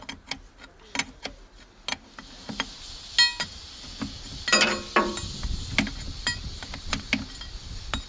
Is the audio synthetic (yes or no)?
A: no